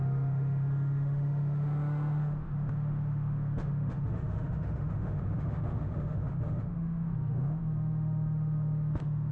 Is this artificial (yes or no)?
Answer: yes